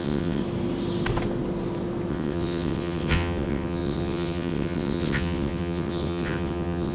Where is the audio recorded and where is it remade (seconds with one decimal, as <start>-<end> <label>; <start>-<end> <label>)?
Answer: 0.0-0.4 remade; 0.4-2.1 recorded; 2.1-6.9 remade